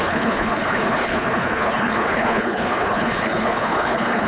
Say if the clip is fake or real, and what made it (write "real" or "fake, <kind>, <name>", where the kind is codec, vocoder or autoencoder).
fake, codec, HILCodec